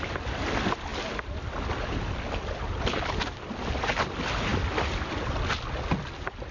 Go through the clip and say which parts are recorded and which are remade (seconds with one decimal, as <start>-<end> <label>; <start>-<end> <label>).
0.0-6.5 recorded